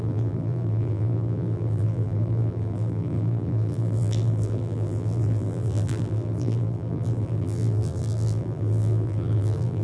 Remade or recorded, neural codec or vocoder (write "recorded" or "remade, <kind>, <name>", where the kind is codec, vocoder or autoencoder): remade, vocoder, BigVGAN v2